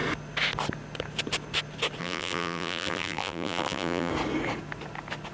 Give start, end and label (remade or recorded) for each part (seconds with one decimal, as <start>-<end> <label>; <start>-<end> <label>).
0.0-2.0 recorded; 2.0-4.1 remade; 4.1-5.3 recorded